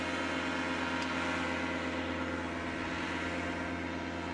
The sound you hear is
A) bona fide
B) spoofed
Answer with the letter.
A